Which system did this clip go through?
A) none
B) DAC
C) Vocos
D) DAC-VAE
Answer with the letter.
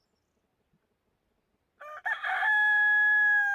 A